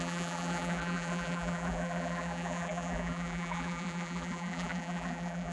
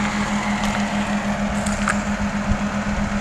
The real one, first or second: second